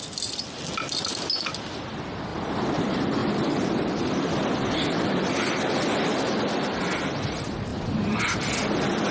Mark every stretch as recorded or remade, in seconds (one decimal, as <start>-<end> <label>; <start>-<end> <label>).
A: 0.0-2.3 recorded; 2.3-2.8 remade; 2.8-3.2 recorded; 3.2-6.5 remade; 6.5-7.7 recorded; 7.7-8.5 remade; 8.5-9.1 recorded